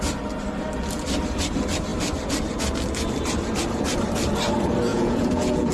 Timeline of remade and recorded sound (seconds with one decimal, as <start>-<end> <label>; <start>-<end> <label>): 0.0-4.9 recorded; 4.9-5.7 remade